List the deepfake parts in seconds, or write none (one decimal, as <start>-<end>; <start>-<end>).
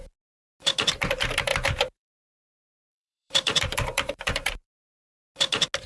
1.5-5.0